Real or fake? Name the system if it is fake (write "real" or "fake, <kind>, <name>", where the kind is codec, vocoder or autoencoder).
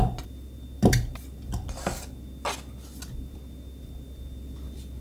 real